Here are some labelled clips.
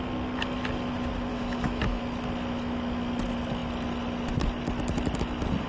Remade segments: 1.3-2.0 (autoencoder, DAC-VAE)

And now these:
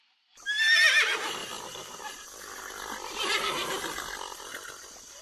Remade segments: 1.4-4.5 (vocoder, BigVGAN v2)